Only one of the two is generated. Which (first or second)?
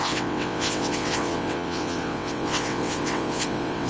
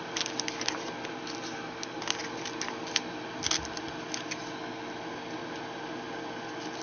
first